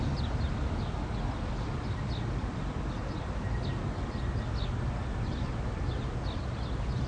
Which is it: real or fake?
real